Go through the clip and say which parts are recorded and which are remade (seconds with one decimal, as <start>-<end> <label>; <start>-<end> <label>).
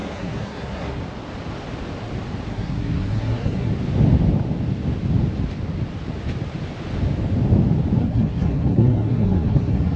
0.0-1.0 remade; 1.0-2.5 recorded; 2.5-3.7 remade; 3.7-8.0 recorded; 8.0-10.0 remade